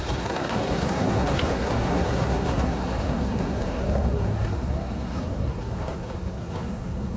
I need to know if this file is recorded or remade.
remade